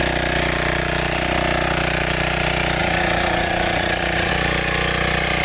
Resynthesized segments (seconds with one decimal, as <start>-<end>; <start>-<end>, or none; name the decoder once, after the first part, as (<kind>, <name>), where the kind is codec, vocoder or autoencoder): 2.8-4.3 (vocoder, Vocos)